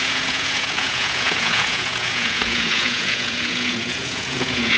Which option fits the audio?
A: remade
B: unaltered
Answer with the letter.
A